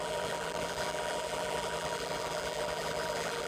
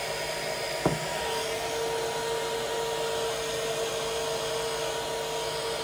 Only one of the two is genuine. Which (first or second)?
second